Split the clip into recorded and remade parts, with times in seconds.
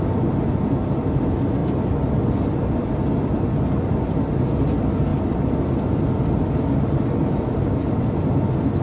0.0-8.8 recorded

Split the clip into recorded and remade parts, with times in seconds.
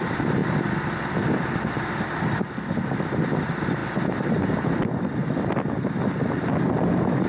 0.0-7.3 recorded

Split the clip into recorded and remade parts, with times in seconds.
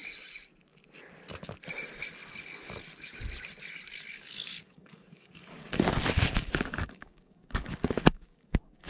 0.0-4.1 recorded; 4.1-8.9 remade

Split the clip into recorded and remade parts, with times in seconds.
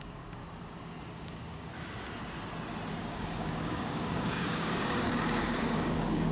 0.0-0.4 remade; 0.4-1.1 recorded; 1.1-1.7 remade; 1.7-3.0 recorded; 3.0-6.3 remade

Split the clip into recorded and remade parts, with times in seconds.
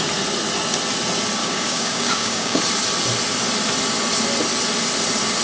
0.0-1.4 recorded; 1.4-2.6 remade; 2.6-5.4 recorded